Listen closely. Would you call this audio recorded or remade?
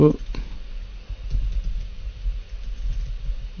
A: recorded